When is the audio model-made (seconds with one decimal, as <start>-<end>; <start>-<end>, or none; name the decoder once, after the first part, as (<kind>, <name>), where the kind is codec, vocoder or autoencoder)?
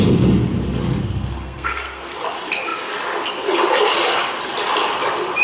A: 1.0-2.0 (codec, SNAC)